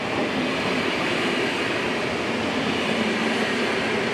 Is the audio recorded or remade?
recorded